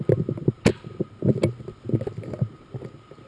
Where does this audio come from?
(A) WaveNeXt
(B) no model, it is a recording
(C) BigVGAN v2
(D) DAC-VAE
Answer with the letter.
B